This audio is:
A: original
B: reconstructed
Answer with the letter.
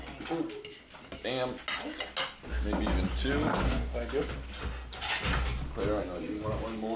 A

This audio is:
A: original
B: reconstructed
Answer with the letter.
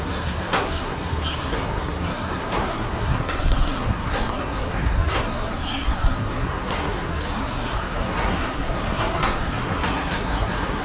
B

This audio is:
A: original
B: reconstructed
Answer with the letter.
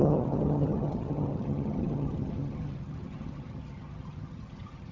B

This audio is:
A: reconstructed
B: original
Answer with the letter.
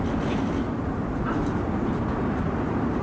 B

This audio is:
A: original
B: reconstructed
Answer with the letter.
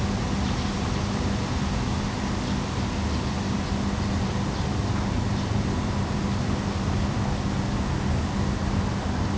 A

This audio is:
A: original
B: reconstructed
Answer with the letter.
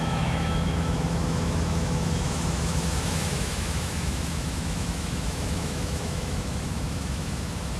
B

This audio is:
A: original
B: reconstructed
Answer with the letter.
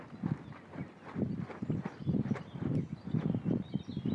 A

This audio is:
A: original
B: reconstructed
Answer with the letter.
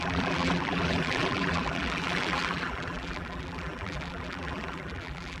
B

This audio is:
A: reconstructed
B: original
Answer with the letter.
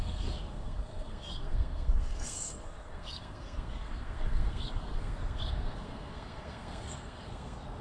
A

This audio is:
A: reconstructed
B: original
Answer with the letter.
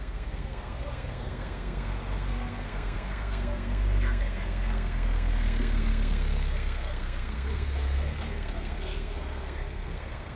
A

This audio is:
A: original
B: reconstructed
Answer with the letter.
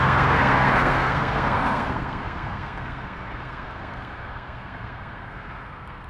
B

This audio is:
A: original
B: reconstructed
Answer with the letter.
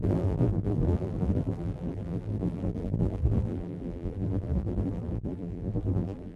B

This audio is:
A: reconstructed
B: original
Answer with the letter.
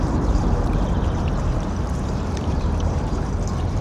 A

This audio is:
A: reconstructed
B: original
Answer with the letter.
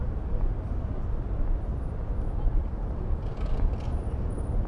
B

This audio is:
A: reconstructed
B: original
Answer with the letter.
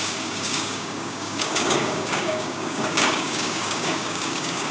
A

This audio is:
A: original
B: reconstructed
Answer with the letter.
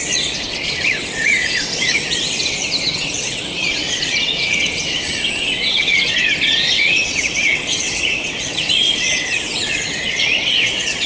B